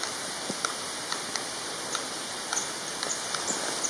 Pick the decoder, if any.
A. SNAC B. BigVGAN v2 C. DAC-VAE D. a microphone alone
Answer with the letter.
D